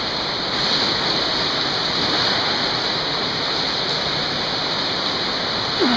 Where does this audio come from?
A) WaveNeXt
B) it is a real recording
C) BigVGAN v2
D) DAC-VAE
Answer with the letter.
B